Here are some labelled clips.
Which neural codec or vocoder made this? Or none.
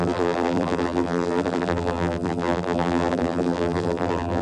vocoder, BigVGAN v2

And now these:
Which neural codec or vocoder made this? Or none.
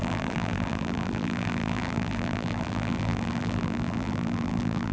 vocoder, BigVGAN v2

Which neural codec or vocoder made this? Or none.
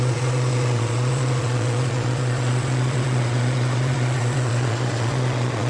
vocoder, Vocos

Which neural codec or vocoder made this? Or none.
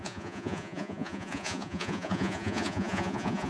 vocoder, Vocos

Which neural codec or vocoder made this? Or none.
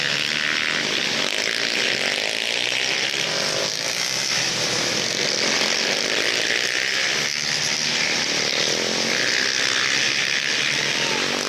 none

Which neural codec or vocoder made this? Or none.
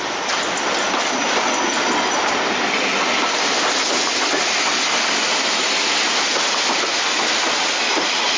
none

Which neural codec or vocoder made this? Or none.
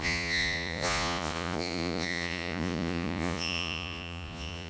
vocoder, Vocos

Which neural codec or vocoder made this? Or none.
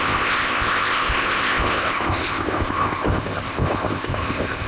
codec, ZipCodec